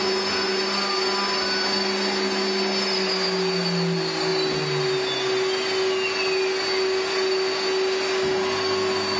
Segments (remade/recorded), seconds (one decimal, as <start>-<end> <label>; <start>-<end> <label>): 0.0-9.2 recorded